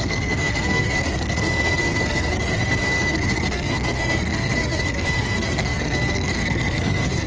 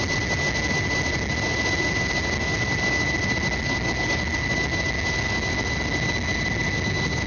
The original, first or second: second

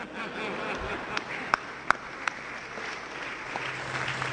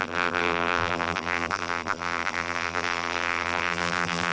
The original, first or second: first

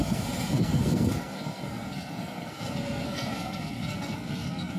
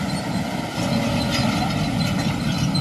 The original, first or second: second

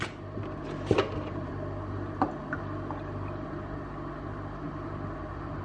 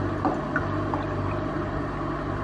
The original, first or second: first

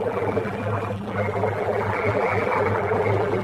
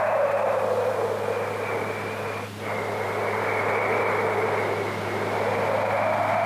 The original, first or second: second